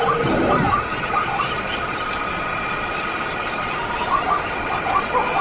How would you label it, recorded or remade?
recorded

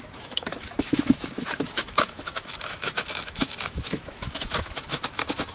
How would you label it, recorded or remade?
remade